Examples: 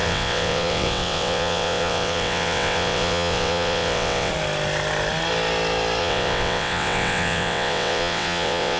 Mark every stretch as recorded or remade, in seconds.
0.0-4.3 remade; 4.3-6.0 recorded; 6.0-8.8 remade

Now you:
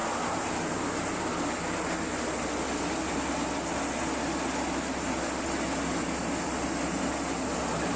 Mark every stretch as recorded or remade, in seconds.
0.0-8.0 recorded

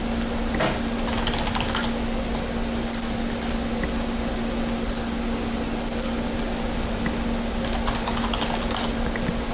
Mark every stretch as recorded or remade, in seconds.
0.0-9.5 recorded

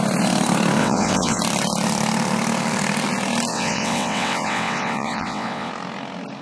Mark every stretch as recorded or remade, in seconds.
0.0-0.8 recorded; 0.8-1.4 remade; 1.4-3.5 recorded; 3.5-5.7 remade; 5.7-6.4 recorded

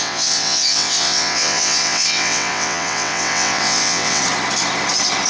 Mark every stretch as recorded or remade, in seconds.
0.0-4.2 remade; 4.2-5.3 recorded

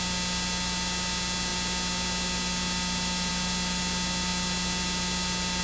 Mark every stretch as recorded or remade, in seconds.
0.0-5.6 recorded

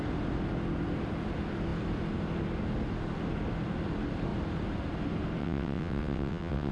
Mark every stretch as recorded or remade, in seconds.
0.0-5.4 recorded; 5.4-6.7 remade